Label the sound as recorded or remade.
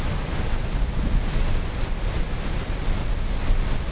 recorded